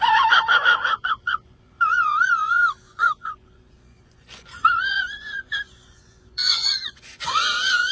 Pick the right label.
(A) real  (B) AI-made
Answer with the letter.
B